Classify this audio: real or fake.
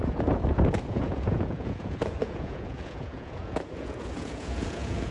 fake